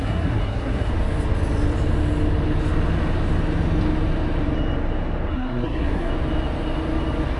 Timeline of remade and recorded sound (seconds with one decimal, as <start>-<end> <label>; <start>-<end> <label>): 0.0-0.9 remade; 0.9-5.3 recorded; 5.3-6.1 remade; 6.1-7.4 recorded